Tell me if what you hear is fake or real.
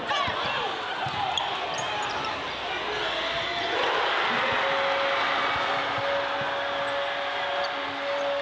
real